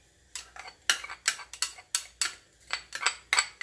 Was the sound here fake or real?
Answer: real